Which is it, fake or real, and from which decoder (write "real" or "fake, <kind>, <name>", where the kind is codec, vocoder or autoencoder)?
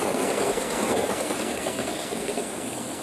fake, codec, SNAC